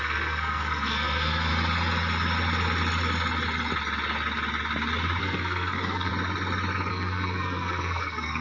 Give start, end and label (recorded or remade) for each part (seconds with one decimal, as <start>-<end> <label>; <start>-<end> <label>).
0.0-1.5 remade; 1.5-5.2 recorded; 5.2-6.1 remade; 6.1-6.9 recorded; 6.9-8.4 remade